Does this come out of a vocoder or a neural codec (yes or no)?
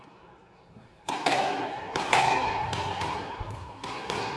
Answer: yes